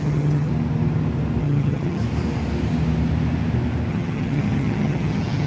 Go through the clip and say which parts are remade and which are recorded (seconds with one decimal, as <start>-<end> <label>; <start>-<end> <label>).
0.0-0.5 remade; 0.5-1.4 recorded; 1.4-2.0 remade; 2.0-3.9 recorded; 3.9-5.5 remade